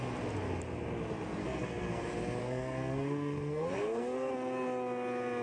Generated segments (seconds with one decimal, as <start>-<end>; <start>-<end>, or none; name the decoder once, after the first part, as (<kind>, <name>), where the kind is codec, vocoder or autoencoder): 1.4-2.0 (codec, SNAC); 2.4-4.3